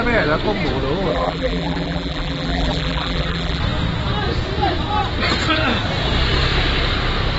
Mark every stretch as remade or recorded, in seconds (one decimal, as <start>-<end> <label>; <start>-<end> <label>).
0.0-1.1 recorded; 1.1-3.6 remade; 3.6-7.4 recorded